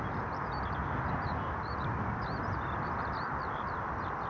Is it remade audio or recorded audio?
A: recorded